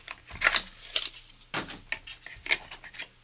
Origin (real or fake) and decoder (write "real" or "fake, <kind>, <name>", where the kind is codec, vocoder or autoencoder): real